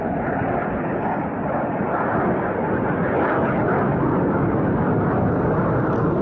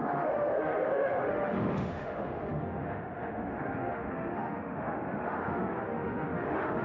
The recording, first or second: first